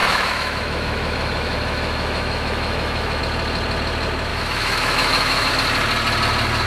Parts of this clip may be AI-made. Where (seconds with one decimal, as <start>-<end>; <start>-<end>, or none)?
0.0-3.2; 4.3-5.5